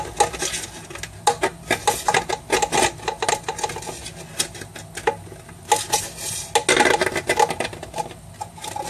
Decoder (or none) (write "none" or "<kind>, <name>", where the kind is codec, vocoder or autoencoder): none